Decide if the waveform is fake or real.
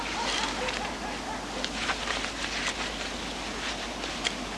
real